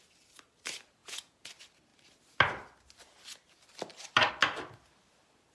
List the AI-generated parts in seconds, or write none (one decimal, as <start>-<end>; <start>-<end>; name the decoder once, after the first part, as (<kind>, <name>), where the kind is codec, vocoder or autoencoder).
1.0-1.5 (vocoder, Vocos)